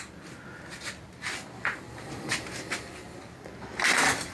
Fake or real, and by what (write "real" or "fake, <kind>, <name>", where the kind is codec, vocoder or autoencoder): real